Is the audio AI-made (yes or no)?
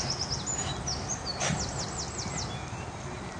no